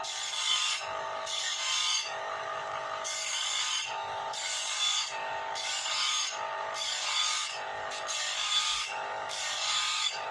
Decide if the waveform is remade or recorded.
remade